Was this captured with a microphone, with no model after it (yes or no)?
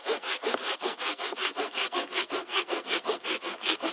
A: no